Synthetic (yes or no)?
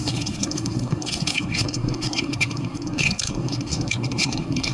yes